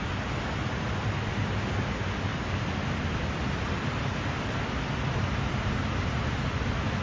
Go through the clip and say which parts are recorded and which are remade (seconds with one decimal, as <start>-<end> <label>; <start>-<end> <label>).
0.0-7.0 recorded